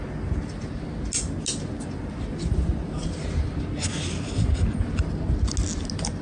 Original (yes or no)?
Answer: yes